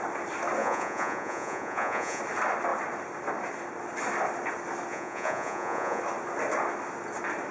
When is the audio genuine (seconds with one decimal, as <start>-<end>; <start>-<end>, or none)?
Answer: 0.0-0.6; 2.2-4.9; 6.0-7.5